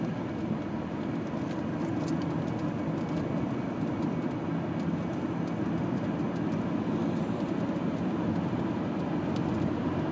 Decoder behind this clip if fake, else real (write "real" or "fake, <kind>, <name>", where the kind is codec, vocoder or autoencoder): real